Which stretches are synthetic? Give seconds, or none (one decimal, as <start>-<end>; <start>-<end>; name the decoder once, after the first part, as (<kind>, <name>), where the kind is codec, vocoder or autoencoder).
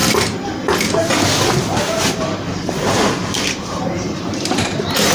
2.0-5.1 (vocoder, BigVGAN v2)